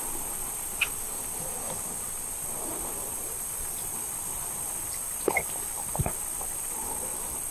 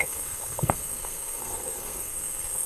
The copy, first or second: second